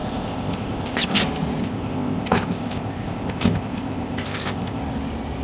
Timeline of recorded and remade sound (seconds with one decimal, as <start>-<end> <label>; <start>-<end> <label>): 0.0-1.2 remade; 1.2-1.6 recorded; 1.6-4.8 remade; 4.8-5.4 recorded